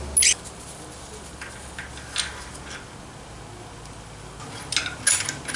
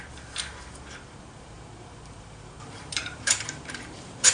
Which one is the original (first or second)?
first